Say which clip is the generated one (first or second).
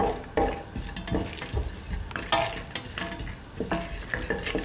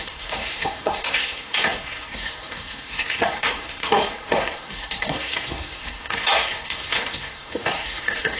second